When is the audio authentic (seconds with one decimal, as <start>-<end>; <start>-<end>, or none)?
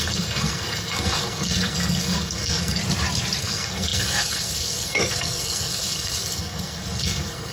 2.8-3.4